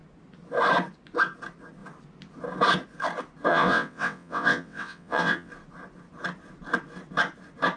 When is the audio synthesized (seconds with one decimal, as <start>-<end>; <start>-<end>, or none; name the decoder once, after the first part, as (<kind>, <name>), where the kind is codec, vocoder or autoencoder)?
3.5-5.5 (vocoder, WaveNeXt)